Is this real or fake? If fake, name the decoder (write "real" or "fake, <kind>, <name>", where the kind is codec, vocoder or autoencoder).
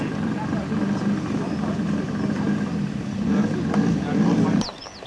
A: real